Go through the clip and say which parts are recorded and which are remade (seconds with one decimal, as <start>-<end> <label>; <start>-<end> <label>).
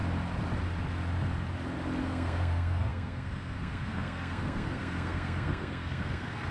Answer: 0.0-2.0 recorded; 2.0-6.5 remade